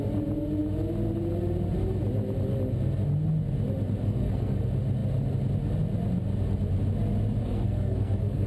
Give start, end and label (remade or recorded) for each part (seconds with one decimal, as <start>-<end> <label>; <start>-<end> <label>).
0.0-4.0 recorded; 4.0-4.6 remade; 4.6-7.4 recorded; 7.4-8.5 remade